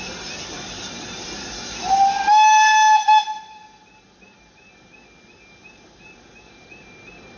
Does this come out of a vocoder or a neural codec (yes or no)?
no